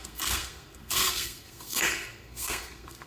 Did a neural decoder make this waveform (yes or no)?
yes